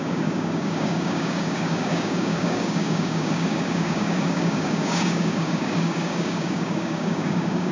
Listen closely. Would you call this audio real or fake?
fake